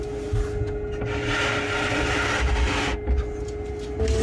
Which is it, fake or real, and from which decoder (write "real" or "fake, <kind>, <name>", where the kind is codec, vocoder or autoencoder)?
real